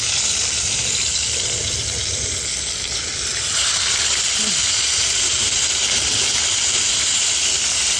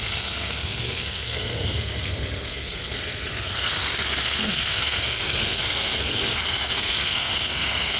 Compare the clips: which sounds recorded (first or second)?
first